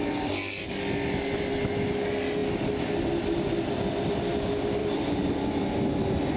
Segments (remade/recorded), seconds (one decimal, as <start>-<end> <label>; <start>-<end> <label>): 0.0-4.8 recorded; 4.8-5.6 remade; 5.6-6.4 recorded